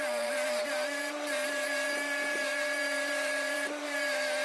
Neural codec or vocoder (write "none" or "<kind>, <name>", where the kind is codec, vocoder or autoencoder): vocoder, BigVGAN v2